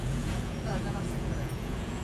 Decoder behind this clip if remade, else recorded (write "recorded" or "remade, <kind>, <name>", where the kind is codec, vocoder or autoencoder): remade, vocoder, Vocos